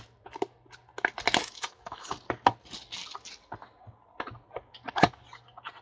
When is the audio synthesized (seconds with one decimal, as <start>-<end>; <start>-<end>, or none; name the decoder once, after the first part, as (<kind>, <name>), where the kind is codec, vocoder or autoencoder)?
1.4-2.1 (autoencoder, DAC-VAE)